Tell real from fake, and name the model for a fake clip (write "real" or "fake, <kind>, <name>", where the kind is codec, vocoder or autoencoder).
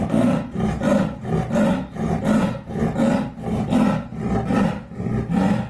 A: real